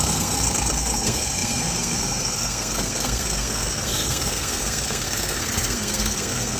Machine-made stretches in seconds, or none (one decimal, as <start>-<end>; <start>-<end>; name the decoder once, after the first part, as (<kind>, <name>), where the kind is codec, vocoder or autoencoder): 0.0-6.6 (codec, SNAC)